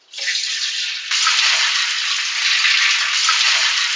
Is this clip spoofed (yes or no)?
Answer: no